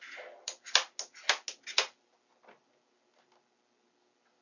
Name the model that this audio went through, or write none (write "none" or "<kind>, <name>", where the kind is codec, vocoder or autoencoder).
none